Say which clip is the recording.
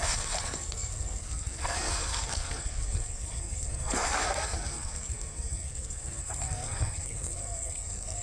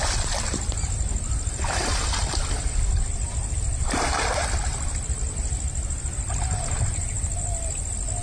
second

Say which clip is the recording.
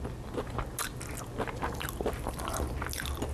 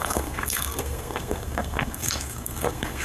first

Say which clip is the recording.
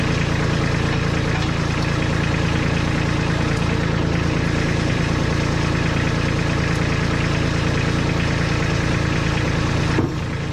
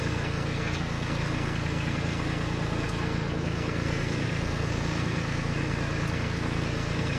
first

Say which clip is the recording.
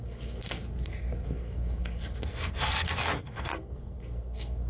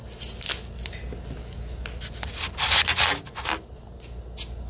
second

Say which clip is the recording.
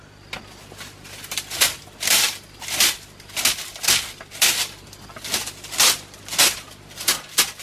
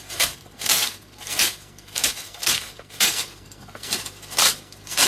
first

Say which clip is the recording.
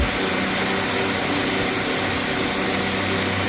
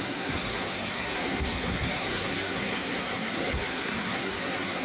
first